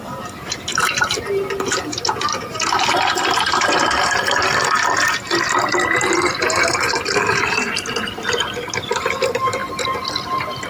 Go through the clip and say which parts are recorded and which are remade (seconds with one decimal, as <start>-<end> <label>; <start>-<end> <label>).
0.0-4.5 remade; 4.5-6.3 recorded; 6.3-9.6 remade; 9.6-10.7 recorded